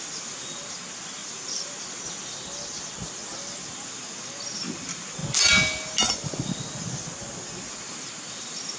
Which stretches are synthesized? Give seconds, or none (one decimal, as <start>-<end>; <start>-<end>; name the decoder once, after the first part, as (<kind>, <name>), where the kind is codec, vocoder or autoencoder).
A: 1.2-1.7 (vocoder, BigVGAN v2)